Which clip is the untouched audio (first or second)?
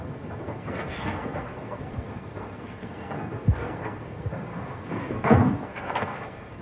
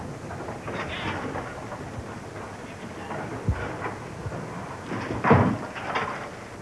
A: second